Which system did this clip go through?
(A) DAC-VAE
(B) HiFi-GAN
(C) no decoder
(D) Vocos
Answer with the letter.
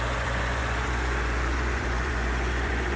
D